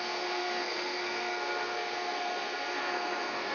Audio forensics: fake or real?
fake